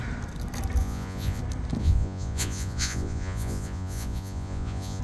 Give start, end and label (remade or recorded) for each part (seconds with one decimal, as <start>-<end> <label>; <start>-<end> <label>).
0.0-0.8 recorded; 0.8-1.4 remade; 1.4-1.8 recorded; 1.8-5.0 remade